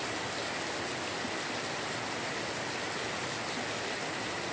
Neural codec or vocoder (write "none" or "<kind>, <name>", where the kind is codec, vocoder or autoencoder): none